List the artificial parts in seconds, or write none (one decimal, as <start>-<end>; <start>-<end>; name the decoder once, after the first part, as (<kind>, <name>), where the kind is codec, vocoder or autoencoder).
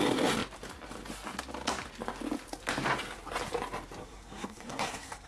4.0-5.3 (codec, SNAC)